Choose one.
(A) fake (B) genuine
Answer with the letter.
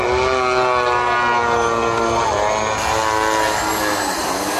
B